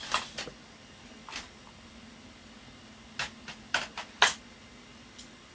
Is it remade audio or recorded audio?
recorded